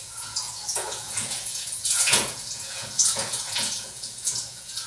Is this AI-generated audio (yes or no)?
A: yes